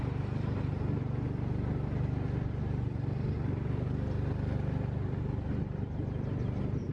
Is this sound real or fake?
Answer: real